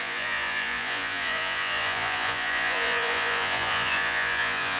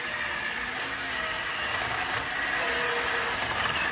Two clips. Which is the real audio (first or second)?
second